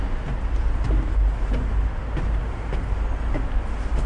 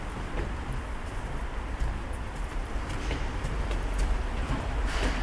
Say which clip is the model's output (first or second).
second